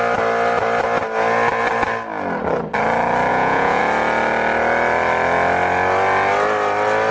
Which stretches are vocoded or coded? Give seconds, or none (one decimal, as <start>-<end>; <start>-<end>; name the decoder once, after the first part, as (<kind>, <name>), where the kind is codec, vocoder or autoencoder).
3.3-3.8 (vocoder, Vocos)